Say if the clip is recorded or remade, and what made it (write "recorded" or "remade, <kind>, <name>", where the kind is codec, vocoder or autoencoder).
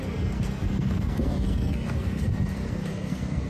remade, codec, SNAC